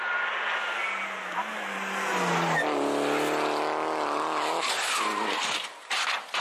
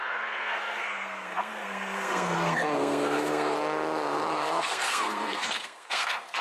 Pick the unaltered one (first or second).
first